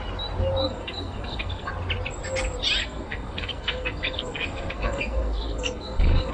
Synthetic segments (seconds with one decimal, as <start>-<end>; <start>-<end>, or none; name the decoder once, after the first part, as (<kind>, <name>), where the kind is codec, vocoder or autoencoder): 0.6-1.7 (codec, SNAC); 2.8-6.3